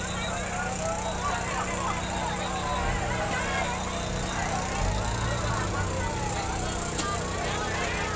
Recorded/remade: recorded